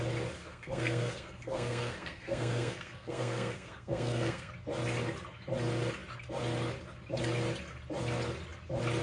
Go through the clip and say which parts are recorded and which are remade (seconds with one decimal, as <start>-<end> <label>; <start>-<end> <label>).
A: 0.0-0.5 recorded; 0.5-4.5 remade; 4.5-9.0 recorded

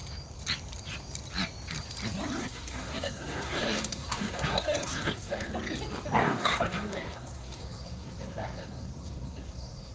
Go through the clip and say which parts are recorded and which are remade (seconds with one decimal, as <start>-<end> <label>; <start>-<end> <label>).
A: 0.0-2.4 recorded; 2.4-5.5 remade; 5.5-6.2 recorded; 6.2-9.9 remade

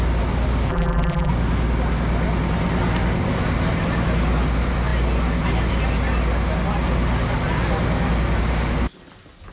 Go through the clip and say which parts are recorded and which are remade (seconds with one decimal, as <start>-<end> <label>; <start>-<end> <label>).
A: 0.0-0.7 recorded; 0.7-1.3 remade; 1.3-9.5 recorded

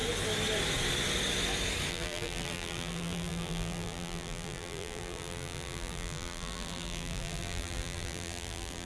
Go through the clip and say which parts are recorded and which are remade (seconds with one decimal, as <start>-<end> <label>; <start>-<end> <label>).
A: 0.0-1.9 recorded; 1.9-8.8 remade